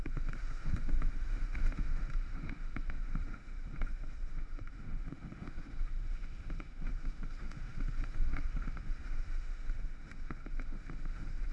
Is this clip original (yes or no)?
no